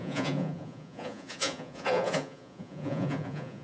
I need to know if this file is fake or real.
fake